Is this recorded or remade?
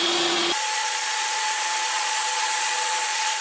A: remade